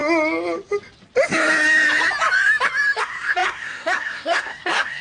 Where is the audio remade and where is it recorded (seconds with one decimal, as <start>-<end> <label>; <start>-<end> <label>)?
0.0-3.0 recorded; 3.0-5.0 remade